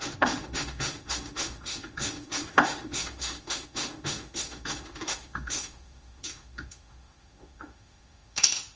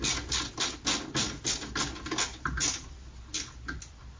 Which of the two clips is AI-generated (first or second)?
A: first